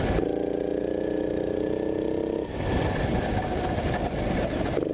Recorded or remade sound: recorded